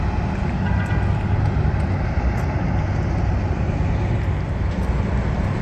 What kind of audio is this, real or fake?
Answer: real